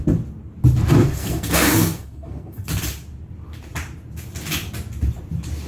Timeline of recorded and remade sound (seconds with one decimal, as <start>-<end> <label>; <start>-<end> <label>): 0.0-1.0 recorded; 1.0-2.7 remade; 2.7-5.7 recorded